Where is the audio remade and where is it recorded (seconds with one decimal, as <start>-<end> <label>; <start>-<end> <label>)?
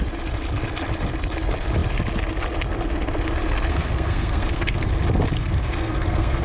0.0-3.7 recorded; 3.7-4.9 remade; 4.9-5.4 recorded; 5.4-6.4 remade